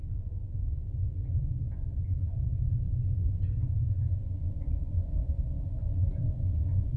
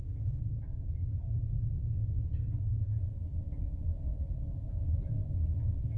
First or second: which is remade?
first